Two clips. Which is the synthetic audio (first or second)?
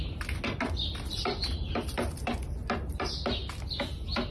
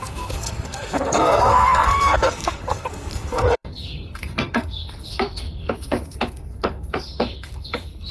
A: second